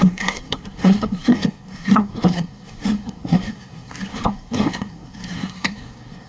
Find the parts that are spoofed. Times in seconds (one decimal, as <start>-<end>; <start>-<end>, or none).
0.0-6.3